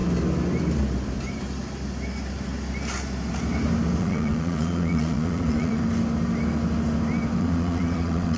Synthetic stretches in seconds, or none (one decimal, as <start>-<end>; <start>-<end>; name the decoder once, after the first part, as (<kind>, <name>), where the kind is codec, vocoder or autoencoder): 4.0-5.8 (vocoder, Vocos); 7.4-8.4